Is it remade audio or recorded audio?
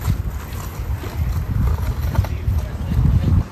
recorded